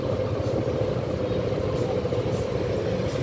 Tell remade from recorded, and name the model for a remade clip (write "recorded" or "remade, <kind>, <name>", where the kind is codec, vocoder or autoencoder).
recorded